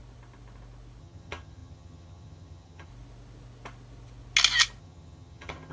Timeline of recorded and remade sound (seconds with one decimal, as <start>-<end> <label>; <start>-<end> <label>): 0.0-1.0 recorded; 1.0-2.9 remade; 2.9-4.8 recorded; 4.8-5.7 remade